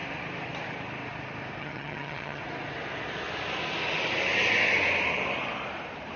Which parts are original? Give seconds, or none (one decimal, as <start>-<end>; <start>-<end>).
0.0-1.6; 2.4-6.2

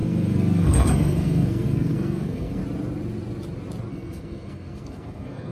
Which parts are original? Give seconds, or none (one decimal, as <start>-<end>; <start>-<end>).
2.6-3.9

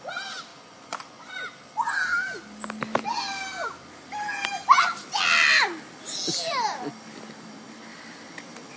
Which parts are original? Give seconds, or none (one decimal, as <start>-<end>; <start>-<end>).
0.0-0.5; 1.3-8.8

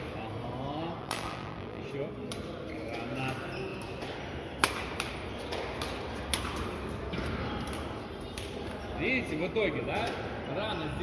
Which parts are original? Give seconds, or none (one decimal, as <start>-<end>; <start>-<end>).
0.0-1.0; 1.8-11.0